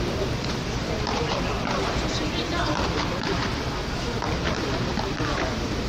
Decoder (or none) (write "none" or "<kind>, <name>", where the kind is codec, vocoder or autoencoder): none